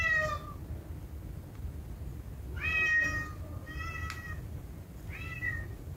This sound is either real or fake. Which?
real